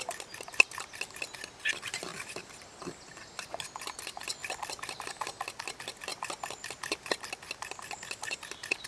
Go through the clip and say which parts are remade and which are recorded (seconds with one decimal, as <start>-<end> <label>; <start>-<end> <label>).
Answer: 0.0-2.1 recorded; 2.1-3.8 remade; 3.8-4.4 recorded; 4.4-5.0 remade; 5.0-8.9 recorded